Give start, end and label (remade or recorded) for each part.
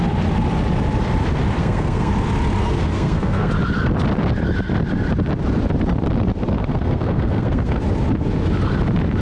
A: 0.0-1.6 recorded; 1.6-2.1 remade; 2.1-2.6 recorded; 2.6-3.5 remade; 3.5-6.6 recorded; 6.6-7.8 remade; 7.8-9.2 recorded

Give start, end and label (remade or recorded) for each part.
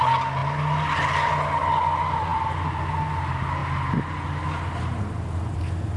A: 0.0-6.0 recorded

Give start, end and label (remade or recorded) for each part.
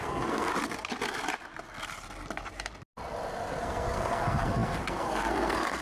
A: 0.0-0.5 remade; 0.5-3.6 recorded; 3.6-5.8 remade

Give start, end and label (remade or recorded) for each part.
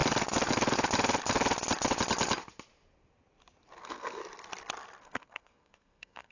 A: 0.0-3.8 recorded; 3.8-4.2 remade; 4.2-5.0 recorded; 5.0-6.3 remade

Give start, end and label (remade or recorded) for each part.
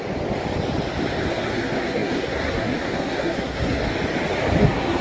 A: 0.0-1.3 recorded; 1.3-3.8 remade; 3.8-4.6 recorded; 4.6-5.0 remade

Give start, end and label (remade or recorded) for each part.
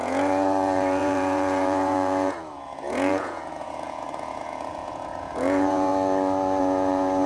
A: 0.0-5.9 remade; 5.9-6.6 recorded; 6.6-7.3 remade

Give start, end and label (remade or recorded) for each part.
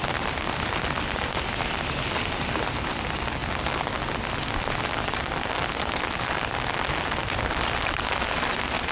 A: 0.0-3.4 remade; 3.4-5.1 recorded; 5.1-8.9 remade